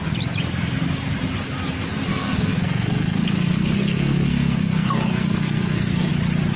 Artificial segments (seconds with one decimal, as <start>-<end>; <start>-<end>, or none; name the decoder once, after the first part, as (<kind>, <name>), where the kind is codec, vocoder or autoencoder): 2.1-6.1 (codec, SNAC)